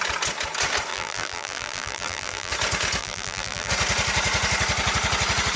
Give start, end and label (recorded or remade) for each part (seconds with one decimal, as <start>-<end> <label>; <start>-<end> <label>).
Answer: 0.0-0.9 recorded; 0.9-2.5 remade; 2.5-3.0 recorded; 3.0-3.7 remade; 3.7-5.6 recorded